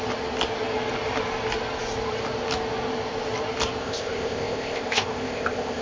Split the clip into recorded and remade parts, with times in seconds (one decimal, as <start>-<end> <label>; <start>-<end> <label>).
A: 0.0-3.8 recorded; 3.8-5.8 remade